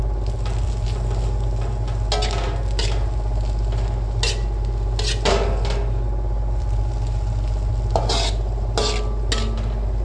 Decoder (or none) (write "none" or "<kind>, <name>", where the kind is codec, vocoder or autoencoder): none